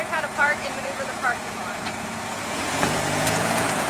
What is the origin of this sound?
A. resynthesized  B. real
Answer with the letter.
A